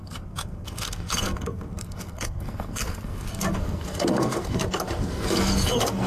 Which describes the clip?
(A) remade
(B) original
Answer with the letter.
A